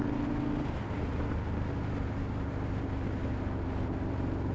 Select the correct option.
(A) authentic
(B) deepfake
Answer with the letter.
A